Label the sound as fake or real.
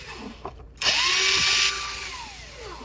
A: real